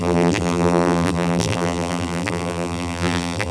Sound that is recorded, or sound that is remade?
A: remade